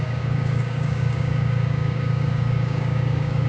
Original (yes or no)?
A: no